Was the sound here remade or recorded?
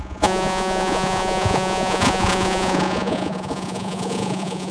remade